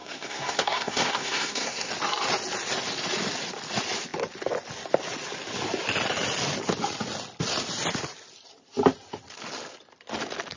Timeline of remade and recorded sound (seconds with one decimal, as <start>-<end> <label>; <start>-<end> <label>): 0.0-1.9 remade; 1.9-10.6 recorded